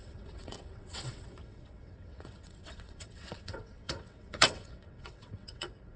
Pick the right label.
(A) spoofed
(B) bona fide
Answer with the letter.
A